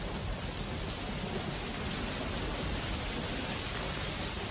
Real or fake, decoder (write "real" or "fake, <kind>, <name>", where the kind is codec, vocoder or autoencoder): real